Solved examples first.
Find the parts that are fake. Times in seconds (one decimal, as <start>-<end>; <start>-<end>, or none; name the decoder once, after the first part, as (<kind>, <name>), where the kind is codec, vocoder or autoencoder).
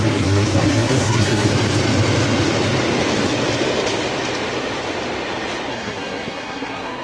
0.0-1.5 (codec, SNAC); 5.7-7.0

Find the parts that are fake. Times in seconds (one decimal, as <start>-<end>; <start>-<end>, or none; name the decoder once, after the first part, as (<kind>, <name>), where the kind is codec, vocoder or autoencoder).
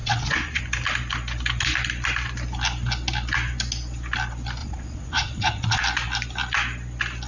0.0-0.6 (vocoder, Vocos); 4.6-5.8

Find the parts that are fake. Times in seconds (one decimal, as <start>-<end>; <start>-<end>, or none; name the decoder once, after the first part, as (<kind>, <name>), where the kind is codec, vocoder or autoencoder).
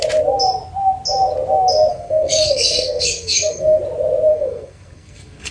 1.9-3.8 (codec, SNAC); 4.3-5.5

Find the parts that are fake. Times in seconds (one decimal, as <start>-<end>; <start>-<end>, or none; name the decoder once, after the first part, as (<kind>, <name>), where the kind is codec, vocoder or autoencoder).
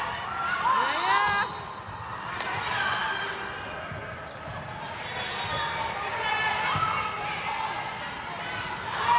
none